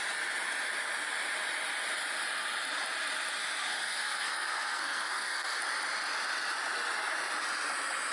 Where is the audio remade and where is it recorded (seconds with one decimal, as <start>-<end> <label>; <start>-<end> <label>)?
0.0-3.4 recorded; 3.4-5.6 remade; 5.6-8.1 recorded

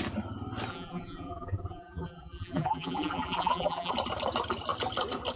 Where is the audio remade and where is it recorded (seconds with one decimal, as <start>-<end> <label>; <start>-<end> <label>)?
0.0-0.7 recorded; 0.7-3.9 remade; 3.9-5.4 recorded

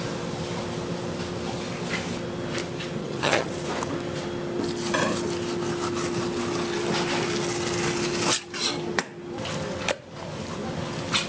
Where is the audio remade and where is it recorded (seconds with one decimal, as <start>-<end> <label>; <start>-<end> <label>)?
0.0-3.0 recorded; 3.0-3.5 remade; 3.5-11.3 recorded

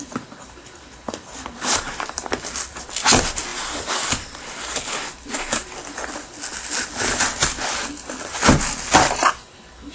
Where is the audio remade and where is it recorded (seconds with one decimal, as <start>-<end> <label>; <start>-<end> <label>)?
0.0-9.9 recorded

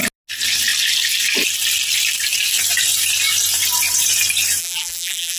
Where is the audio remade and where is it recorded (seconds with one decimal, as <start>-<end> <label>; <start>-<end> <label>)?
0.0-4.6 recorded; 4.6-5.4 remade

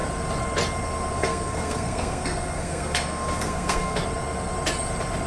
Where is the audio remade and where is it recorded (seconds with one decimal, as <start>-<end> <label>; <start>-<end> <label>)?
0.0-1.1 recorded; 1.1-4.0 remade; 4.0-5.3 recorded

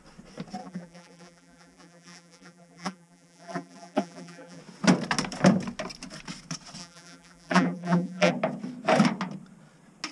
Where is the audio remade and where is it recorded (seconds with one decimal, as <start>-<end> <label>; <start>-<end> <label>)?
0.0-0.6 recorded; 0.6-4.6 remade; 4.6-6.8 recorded; 6.8-8.3 remade; 8.3-10.1 recorded